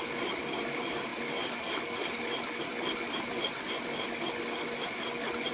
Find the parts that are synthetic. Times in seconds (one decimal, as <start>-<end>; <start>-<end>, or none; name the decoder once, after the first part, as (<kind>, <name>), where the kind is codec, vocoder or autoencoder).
none